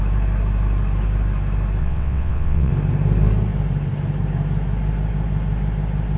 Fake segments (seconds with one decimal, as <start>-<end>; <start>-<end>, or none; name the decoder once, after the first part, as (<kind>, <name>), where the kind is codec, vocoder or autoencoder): 1.8-2.7 (vocoder, WaveNeXt)